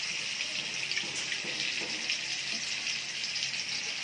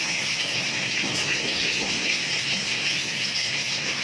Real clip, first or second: first